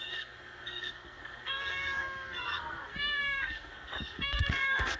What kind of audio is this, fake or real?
fake